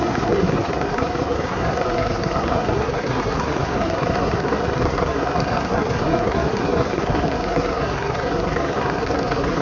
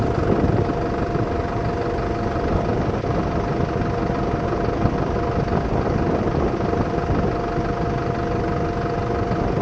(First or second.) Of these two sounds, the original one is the second